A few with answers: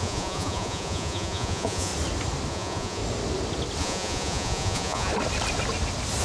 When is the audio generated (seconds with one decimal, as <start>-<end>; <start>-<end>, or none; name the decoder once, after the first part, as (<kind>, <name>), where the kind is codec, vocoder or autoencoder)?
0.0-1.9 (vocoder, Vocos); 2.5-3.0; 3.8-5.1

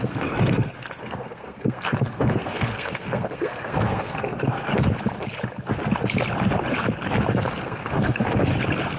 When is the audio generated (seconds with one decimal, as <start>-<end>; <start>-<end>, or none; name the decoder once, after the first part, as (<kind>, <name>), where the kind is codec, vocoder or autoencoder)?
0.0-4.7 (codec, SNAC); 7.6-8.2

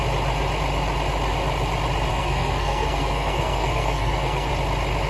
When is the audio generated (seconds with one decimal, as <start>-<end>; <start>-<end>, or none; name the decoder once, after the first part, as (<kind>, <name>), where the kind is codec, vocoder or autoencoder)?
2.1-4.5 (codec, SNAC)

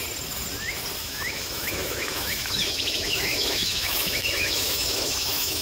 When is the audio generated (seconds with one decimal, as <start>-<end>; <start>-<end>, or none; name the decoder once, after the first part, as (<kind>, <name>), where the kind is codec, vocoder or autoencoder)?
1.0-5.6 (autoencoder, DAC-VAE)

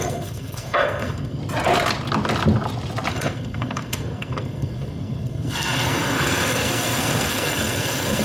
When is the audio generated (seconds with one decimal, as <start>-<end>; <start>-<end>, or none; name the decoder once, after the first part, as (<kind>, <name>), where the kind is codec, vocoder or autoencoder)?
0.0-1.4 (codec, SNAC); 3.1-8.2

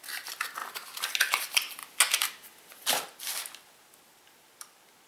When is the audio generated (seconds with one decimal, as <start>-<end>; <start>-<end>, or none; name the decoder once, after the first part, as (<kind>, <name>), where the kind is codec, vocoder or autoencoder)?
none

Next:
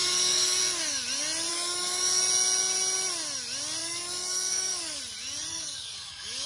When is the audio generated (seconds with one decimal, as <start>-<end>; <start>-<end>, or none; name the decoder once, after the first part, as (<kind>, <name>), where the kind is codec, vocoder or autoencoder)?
0.0-0.6 (codec, DAC); 1.5-2.2; 3.8-5.0; 5.5-6.5